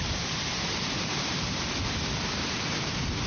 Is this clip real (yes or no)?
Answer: no